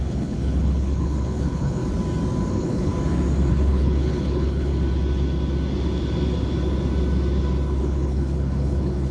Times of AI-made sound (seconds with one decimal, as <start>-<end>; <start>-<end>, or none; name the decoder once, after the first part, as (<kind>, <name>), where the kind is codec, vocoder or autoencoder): 0.0-1.8 (codec, HILCodec); 2.5-2.9; 3.5-4.7; 7.8-9.1